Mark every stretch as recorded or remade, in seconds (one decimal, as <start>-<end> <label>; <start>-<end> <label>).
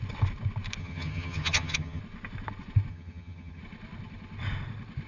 0.0-0.8 recorded; 0.8-2.0 remade; 2.0-2.9 recorded; 2.9-3.6 remade; 3.6-5.1 recorded